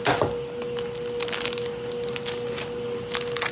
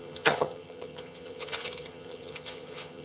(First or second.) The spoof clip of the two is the second